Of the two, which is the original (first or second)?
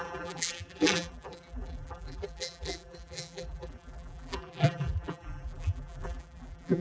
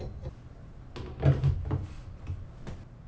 second